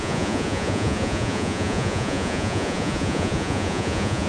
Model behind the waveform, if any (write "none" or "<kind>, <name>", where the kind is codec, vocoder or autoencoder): vocoder, Vocos